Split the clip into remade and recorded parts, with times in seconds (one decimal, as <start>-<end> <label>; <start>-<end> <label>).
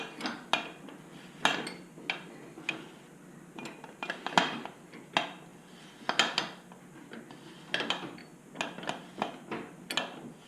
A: 0.0-10.5 recorded